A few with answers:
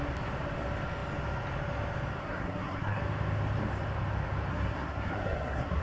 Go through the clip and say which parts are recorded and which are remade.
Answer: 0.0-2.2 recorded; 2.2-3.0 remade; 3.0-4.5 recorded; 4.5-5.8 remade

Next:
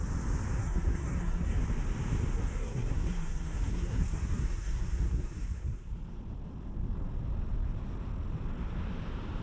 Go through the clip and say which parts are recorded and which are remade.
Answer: 0.0-0.6 recorded; 0.6-1.6 remade; 1.6-2.4 recorded; 2.4-5.9 remade; 5.9-9.4 recorded

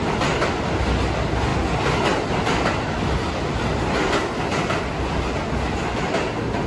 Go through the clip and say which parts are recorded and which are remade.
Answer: 0.0-6.7 recorded